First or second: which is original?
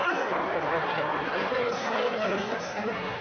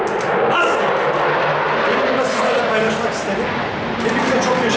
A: second